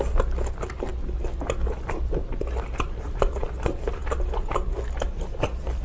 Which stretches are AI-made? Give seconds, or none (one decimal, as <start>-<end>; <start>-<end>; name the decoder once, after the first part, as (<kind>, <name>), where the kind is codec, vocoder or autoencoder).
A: none